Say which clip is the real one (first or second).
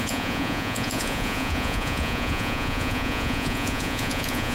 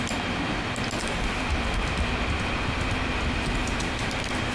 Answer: second